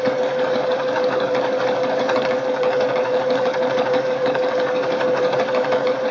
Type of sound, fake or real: fake